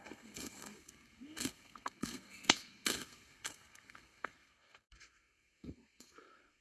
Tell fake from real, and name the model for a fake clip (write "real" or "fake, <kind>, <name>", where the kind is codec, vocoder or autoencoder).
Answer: fake, codec, SNAC